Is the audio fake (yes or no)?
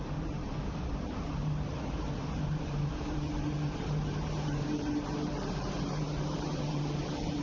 yes